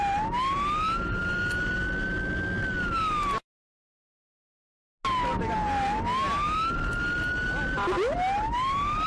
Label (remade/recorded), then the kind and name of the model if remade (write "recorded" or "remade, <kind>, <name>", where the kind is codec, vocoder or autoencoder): recorded